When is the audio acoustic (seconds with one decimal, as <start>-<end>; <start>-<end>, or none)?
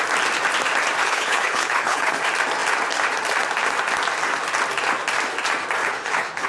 0.0-1.0; 2.2-5.8